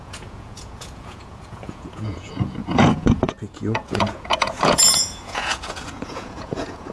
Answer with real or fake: fake